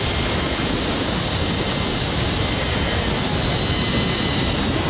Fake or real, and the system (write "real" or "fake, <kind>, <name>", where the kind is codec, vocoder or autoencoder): real